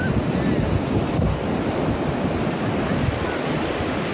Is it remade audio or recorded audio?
recorded